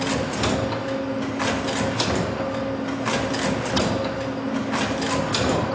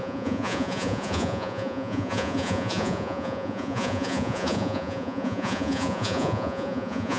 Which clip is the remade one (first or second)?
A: second